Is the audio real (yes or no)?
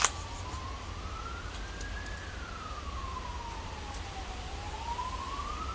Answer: yes